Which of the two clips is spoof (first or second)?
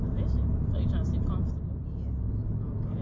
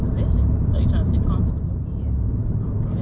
second